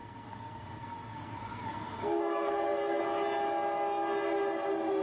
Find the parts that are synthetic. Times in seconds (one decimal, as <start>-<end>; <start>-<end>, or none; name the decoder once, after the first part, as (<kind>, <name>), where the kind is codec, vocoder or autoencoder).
0.0-3.0 (codec, SNAC)